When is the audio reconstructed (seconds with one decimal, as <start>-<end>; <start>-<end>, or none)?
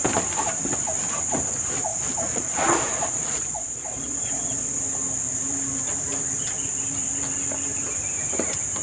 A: 1.9-4.8